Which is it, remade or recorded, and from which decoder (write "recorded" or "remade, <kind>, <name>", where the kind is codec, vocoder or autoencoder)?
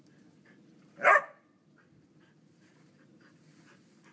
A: recorded